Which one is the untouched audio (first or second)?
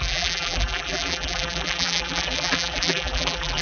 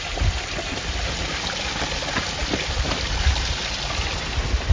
second